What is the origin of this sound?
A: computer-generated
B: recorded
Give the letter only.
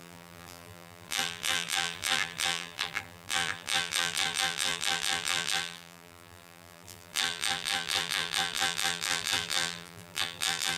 A